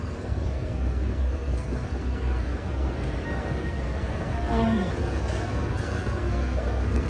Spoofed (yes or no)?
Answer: yes